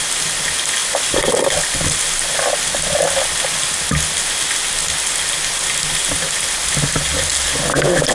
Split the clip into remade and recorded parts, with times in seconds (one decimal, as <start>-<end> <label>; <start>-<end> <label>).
0.0-8.1 recorded